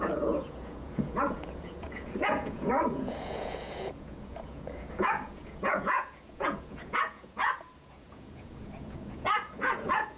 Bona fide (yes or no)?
no